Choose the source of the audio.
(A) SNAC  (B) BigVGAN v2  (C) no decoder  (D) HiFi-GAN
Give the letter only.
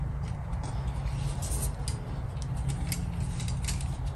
C